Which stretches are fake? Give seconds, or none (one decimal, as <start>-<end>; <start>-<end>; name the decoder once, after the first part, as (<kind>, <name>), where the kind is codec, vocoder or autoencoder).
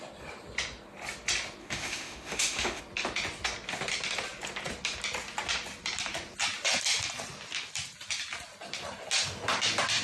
1.6-2.8 (autoencoder, DAC-VAE)